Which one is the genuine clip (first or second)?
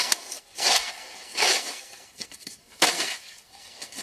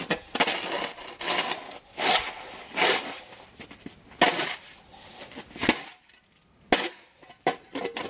second